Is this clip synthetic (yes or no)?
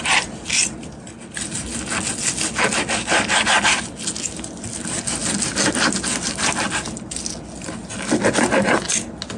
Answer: no